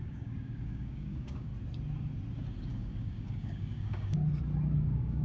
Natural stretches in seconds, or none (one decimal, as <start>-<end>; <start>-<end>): 1.5-2.7; 4.2-4.8